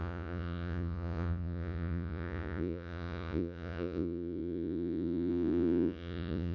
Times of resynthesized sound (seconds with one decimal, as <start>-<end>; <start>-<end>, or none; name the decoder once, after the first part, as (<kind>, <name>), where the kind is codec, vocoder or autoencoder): 0.0-6.5 (vocoder, Vocos)